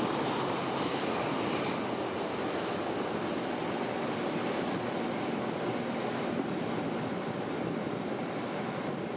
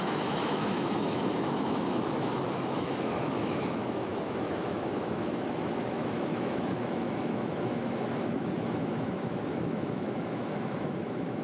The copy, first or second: second